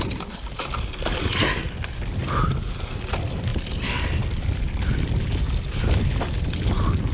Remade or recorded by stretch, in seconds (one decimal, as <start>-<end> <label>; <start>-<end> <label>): 0.0-7.1 recorded